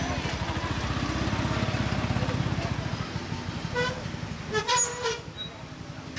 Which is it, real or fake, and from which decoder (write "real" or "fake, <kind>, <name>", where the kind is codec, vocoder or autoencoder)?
real